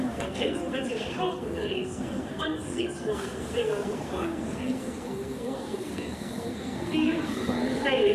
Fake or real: fake